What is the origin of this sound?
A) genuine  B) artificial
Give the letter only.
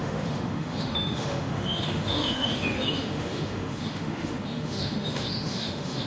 B